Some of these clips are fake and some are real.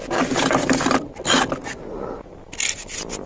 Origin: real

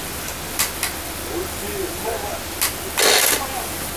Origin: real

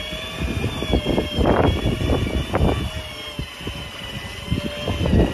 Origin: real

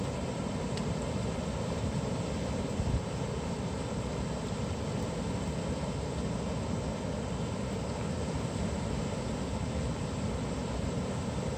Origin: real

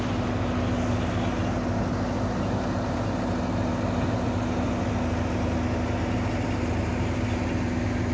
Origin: real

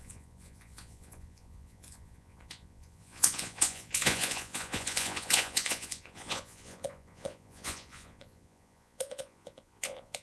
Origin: fake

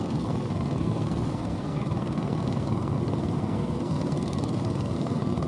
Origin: fake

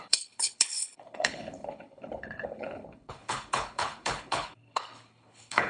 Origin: fake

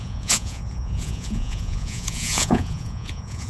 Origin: fake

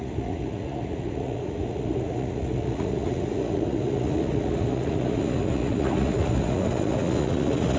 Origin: fake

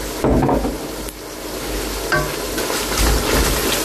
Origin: real